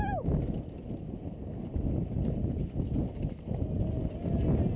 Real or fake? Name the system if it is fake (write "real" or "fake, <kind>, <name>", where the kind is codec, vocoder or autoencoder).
real